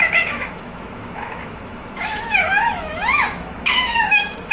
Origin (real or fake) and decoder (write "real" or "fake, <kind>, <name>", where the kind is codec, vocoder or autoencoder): fake, autoencoder, DAC-VAE